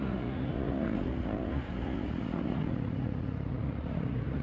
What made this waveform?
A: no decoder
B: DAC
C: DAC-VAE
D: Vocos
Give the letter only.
D